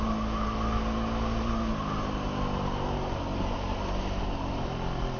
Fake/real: real